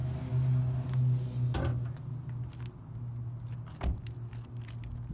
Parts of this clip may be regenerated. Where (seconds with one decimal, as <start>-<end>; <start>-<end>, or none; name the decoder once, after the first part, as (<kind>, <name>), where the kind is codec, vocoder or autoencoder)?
none